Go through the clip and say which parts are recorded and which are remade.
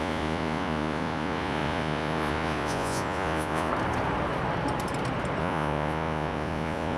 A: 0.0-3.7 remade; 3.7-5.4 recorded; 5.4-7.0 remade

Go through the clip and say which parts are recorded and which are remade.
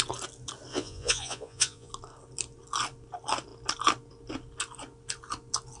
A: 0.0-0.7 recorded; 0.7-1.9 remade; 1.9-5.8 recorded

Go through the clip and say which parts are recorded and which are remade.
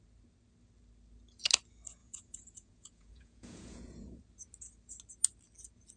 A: 0.0-2.0 recorded; 2.0-4.2 remade; 4.2-6.0 recorded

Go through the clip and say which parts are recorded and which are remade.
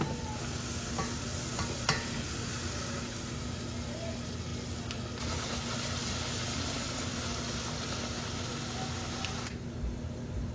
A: 0.0-10.5 recorded